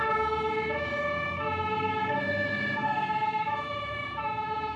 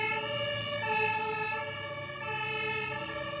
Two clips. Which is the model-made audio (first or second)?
first